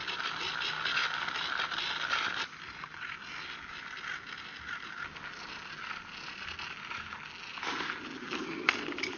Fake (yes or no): no